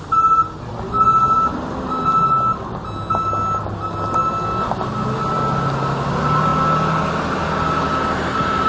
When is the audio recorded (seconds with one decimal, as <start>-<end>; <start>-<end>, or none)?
0.0-8.7